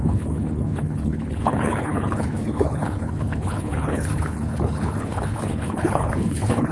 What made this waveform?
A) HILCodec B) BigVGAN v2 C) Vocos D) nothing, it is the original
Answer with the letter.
A